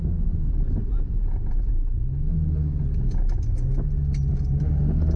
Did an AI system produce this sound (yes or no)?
no